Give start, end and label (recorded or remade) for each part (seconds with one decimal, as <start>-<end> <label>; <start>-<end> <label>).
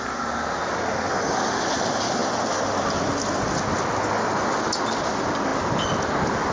0.0-6.5 recorded